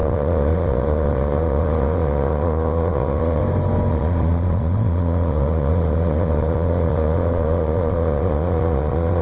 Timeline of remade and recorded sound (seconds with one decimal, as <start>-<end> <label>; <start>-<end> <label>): 0.0-3.4 remade; 3.4-3.9 recorded; 3.9-9.2 remade